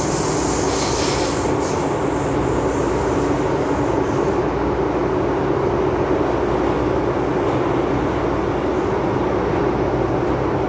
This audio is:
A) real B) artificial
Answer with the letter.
A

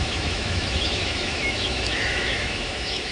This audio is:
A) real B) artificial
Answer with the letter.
B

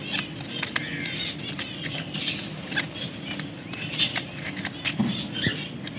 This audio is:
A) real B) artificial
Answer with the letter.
A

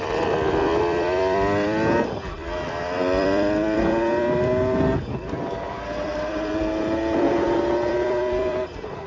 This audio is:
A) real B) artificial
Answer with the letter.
B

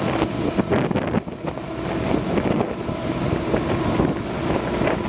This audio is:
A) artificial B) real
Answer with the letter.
B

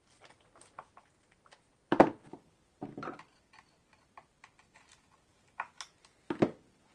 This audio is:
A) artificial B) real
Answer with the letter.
B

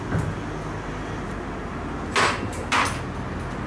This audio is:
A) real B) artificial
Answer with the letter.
A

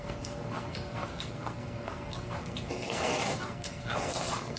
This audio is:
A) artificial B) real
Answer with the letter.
A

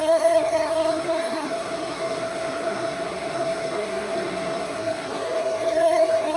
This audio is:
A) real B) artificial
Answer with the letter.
B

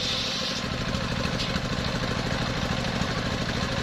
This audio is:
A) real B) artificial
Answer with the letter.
A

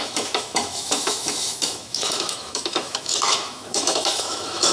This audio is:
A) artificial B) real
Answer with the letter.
A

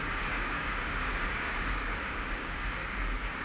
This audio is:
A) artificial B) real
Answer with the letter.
A